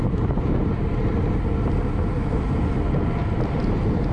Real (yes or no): yes